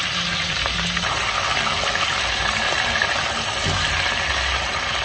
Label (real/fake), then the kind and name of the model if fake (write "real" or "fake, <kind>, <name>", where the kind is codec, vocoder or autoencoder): real